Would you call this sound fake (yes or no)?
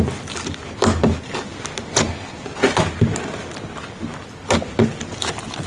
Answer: no